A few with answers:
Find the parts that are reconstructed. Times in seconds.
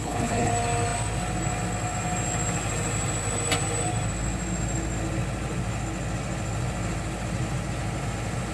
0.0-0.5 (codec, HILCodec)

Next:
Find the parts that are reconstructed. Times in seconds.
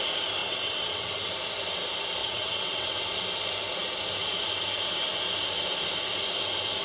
0.4-1.1 (vocoder, WaveNeXt); 2.2-3.0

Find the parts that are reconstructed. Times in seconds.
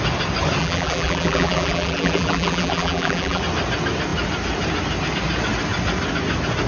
0.6-3.4 (vocoder, BigVGAN v2)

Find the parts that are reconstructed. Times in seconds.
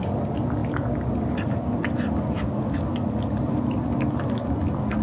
none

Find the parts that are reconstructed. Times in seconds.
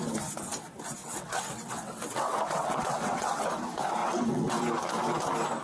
1.0-3.5 (vocoder, WaveNeXt); 4.0-4.6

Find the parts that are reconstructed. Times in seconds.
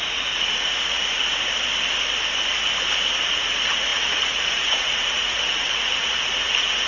0.0-1.2 (vocoder, Vocos); 3.2-6.9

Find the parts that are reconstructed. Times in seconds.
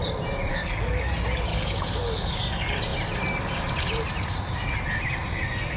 0.5-1.1 (codec, DAC); 1.5-2.4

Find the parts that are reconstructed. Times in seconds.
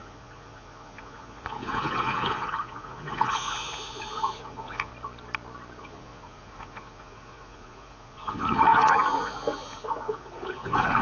0.0-4.9 (vocoder, Vocos); 5.8-11.0